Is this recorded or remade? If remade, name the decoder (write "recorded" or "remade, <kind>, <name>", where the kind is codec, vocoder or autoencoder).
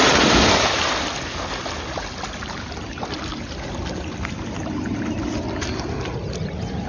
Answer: recorded